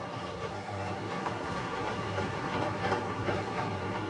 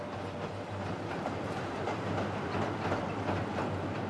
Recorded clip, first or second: second